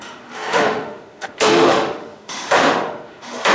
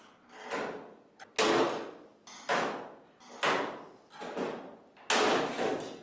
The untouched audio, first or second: second